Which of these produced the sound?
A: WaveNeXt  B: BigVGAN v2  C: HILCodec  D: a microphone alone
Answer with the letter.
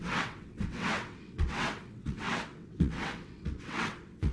A